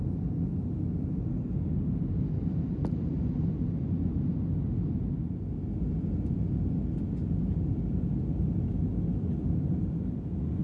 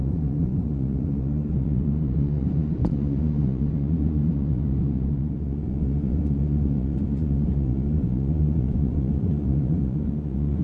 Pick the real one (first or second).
first